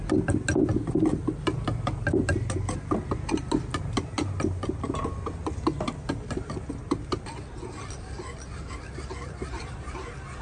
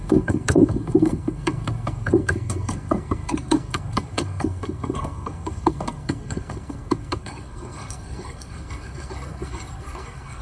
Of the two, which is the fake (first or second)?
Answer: second